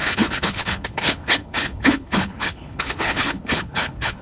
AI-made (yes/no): yes